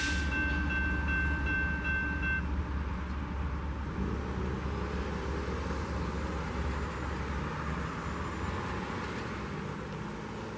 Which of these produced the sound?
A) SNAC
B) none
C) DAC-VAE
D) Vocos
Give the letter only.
B